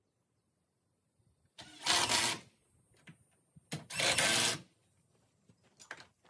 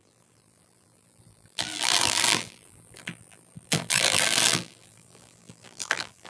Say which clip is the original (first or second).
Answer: first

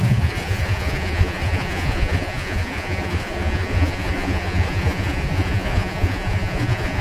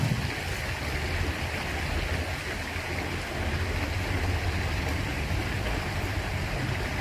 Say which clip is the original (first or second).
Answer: second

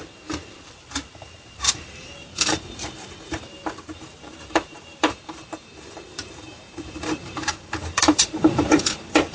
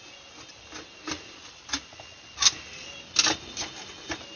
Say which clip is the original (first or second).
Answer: second